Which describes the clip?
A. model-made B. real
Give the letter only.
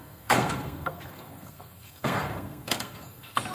A